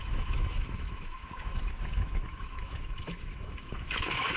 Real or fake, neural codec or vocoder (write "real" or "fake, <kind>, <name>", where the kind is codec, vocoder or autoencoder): fake, autoencoder, DAC-VAE